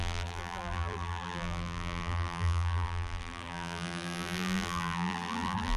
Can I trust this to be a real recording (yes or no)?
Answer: no